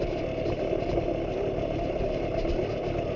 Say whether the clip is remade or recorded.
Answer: recorded